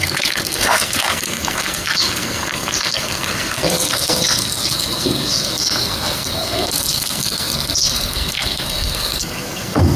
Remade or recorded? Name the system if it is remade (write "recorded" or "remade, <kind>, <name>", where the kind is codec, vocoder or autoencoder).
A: remade, codec, SNAC